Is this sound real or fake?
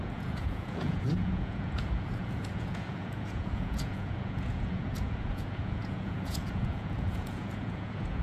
fake